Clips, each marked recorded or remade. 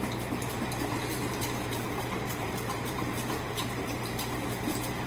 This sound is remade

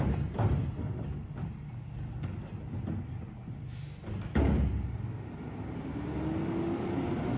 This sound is recorded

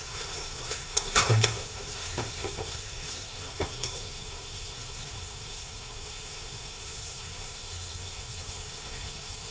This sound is remade